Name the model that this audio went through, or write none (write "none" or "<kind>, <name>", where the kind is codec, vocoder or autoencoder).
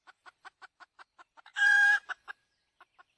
vocoder, BigVGAN v2